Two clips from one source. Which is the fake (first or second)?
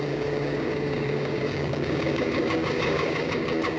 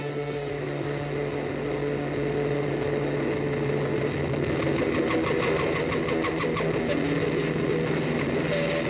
first